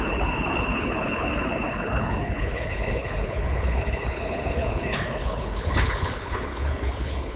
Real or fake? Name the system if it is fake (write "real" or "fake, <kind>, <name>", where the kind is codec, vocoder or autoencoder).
fake, codec, HILCodec